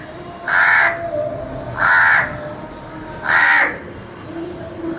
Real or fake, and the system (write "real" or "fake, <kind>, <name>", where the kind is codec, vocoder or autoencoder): real